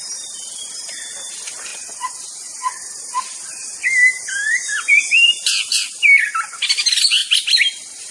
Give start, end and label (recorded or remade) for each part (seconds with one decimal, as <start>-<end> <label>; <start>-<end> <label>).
0.0-1.7 recorded; 1.7-2.8 remade; 2.8-8.1 recorded